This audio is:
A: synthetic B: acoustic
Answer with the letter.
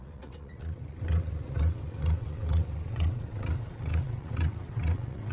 A